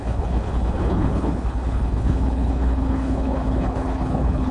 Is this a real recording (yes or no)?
no